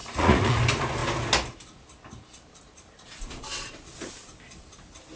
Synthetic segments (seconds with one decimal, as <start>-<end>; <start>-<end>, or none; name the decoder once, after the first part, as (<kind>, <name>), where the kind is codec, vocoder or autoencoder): 0.0-0.6 (vocoder, Vocos)